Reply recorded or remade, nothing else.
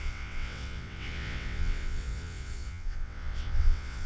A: remade